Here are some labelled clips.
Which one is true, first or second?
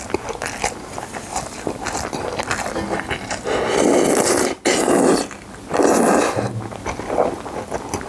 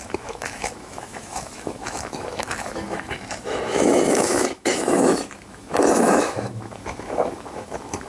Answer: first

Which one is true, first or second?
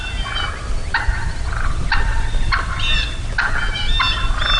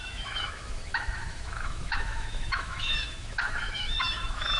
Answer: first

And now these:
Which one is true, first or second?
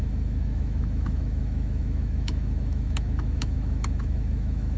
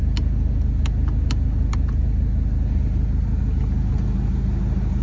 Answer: second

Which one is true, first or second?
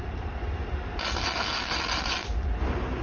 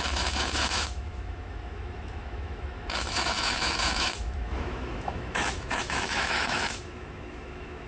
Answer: first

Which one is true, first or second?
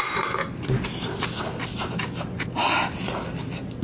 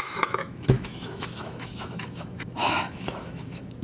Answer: first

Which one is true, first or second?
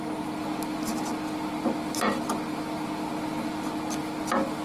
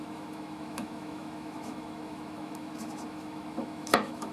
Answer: first